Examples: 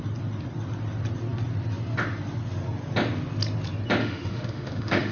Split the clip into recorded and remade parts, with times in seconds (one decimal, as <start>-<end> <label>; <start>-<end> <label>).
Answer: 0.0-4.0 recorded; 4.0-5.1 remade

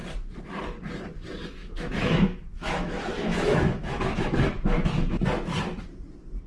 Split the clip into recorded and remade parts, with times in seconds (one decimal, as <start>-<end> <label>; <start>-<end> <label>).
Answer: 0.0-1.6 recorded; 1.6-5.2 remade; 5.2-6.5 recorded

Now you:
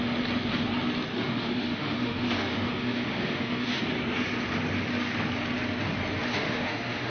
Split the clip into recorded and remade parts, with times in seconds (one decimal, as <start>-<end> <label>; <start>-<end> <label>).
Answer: 0.0-1.1 recorded; 1.1-3.8 remade; 3.8-6.3 recorded; 6.3-7.1 remade

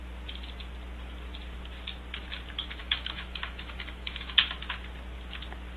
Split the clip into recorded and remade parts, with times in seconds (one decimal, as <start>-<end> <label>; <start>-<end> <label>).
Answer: 0.0-2.8 recorded; 2.8-4.4 remade; 4.4-5.8 recorded

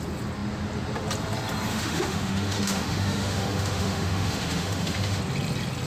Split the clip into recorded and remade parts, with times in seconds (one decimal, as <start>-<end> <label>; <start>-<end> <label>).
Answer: 0.0-1.7 recorded; 1.7-5.2 remade; 5.2-5.9 recorded

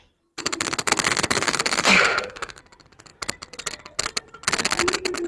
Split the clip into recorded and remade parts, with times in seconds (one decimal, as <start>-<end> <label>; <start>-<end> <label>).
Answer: 0.0-0.4 recorded; 0.4-2.6 remade; 2.6-5.3 recorded

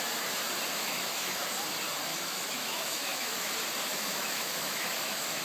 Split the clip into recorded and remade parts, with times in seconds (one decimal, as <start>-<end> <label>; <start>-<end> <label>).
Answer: 0.0-0.7 recorded; 0.7-1.4 remade; 1.4-2.1 recorded; 2.1-3.5 remade; 3.5-3.9 recorded; 3.9-5.4 remade